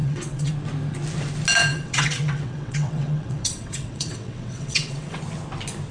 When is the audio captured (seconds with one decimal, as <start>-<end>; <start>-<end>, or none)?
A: 0.5-1.7; 5.2-5.9